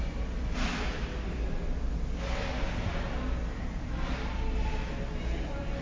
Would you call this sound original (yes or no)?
yes